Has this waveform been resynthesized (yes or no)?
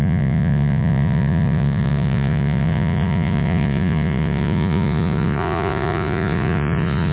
yes